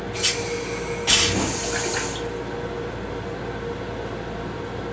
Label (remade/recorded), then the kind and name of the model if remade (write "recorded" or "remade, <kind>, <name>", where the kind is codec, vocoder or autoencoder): recorded